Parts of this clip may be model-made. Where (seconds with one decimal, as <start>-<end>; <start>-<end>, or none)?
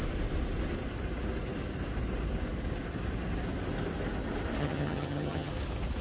4.6-5.5